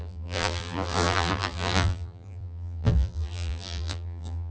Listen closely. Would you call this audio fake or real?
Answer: fake